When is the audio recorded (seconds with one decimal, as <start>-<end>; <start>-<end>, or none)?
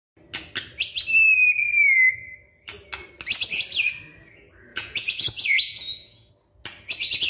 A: 0.0-4.7; 6.3-7.3